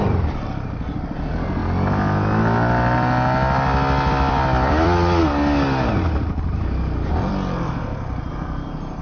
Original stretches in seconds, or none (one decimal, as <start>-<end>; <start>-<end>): 1.6-4.1; 5.2-7.1